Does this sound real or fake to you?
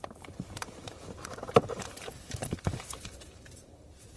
fake